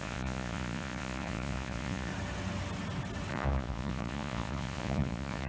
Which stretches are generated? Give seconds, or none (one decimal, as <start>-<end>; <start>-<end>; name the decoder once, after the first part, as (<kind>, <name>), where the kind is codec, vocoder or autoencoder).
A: 0.0-2.1 (vocoder, Vocos); 3.3-5.5